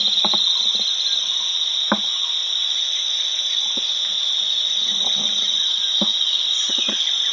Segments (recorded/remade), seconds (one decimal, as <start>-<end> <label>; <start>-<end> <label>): 0.0-7.3 recorded